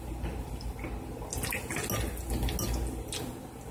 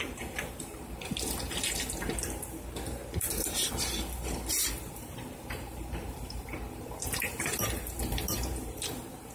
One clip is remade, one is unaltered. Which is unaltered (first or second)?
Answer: first